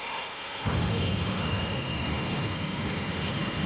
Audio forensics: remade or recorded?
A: remade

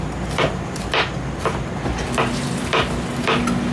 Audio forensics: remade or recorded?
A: recorded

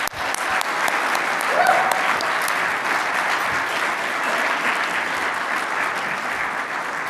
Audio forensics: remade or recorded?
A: recorded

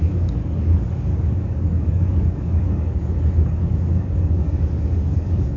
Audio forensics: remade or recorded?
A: remade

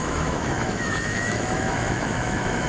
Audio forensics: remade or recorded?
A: remade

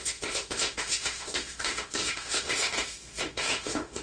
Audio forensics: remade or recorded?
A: remade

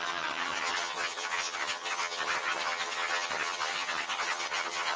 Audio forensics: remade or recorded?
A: remade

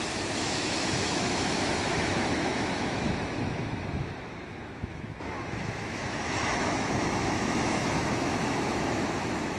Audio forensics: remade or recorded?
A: remade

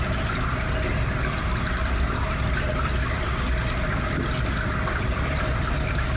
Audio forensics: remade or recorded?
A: recorded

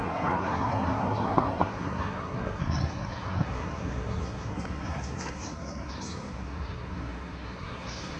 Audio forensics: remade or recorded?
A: remade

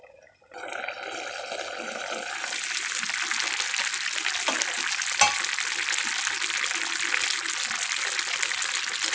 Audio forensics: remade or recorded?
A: recorded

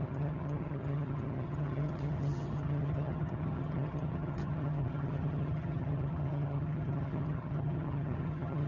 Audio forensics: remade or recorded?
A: remade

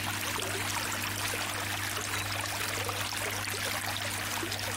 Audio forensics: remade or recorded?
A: recorded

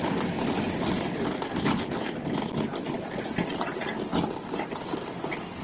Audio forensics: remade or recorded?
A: recorded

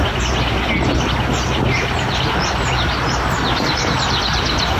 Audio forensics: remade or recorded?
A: recorded